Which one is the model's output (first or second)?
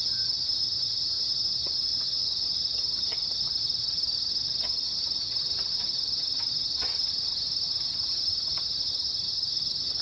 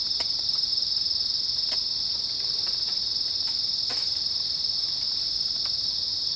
first